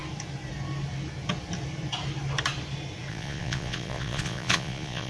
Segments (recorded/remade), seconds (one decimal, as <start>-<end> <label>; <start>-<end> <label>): 0.0-3.1 recorded; 3.1-5.1 remade